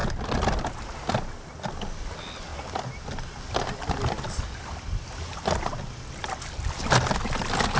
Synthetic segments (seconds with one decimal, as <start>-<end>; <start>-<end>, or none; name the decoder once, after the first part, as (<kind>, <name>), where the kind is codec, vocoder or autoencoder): none